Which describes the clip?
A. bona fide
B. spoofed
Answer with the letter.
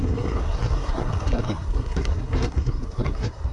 B